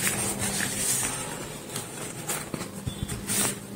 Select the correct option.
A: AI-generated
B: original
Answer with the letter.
B